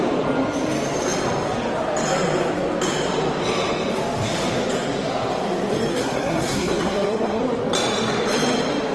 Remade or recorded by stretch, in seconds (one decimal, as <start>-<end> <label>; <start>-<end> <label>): 0.0-5.9 recorded; 5.9-7.4 remade; 7.4-8.9 recorded